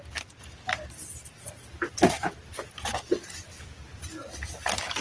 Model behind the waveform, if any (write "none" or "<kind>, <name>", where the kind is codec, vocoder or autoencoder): none